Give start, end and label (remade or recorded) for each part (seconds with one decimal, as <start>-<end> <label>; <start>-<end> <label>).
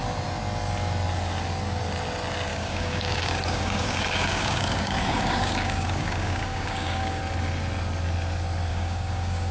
0.0-2.5 recorded; 2.5-7.2 remade; 7.2-8.7 recorded; 8.7-9.5 remade